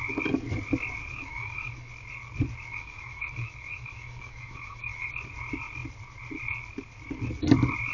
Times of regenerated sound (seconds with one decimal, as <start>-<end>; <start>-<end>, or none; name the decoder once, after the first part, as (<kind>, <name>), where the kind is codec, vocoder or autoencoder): 1.2-1.9 (autoencoder, DAC-VAE); 2.7-5.1